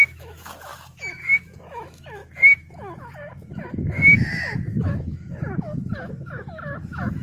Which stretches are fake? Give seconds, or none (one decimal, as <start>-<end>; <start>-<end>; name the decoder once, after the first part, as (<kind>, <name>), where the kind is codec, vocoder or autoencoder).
0.0-7.2 (autoencoder, DAC-VAE)